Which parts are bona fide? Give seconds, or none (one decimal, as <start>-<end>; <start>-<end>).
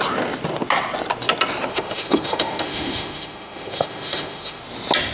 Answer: 0.0-1.7; 4.6-5.1